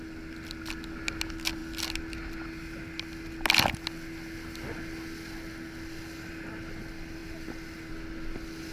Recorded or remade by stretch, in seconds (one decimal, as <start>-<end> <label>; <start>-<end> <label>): 0.0-8.7 recorded